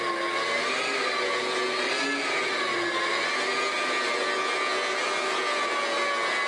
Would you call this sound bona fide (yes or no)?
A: yes